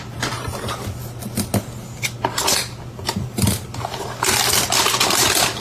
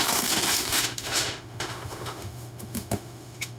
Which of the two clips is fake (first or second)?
second